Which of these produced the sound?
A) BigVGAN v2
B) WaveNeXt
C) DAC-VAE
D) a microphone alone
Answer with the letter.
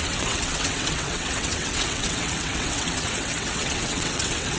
B